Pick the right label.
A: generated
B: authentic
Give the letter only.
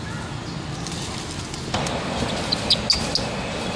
B